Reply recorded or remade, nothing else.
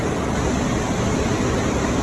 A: recorded